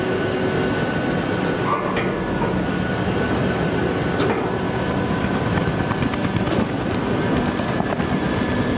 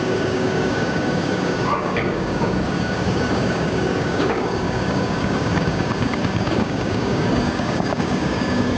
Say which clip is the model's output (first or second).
second